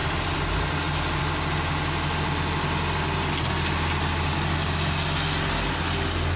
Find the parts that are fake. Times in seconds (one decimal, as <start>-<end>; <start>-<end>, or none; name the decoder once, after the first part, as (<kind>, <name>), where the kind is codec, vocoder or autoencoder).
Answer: none